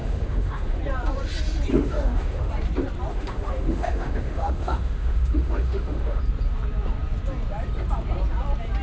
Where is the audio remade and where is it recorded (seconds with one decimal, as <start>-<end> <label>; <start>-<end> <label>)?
0.0-0.8 remade; 0.8-1.7 recorded; 1.7-2.5 remade; 2.5-3.1 recorded; 3.1-6.2 remade; 6.2-8.8 recorded